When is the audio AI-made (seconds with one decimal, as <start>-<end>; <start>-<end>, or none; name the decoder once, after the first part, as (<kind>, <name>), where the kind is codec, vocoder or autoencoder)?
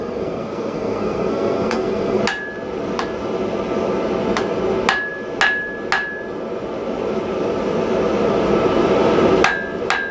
0.0-2.2 (codec, SNAC)